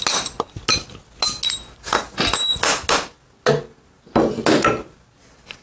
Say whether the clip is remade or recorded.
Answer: recorded